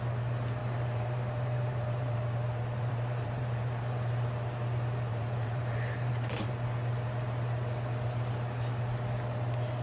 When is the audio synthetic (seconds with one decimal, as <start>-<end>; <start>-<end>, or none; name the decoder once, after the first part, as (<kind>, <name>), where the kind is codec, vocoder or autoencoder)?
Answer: 0.6-4.1 (vocoder, BigVGAN v2); 5.1-6.5